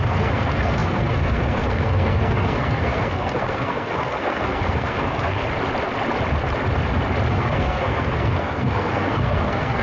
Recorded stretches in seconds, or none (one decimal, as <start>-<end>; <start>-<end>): 5.4-7.3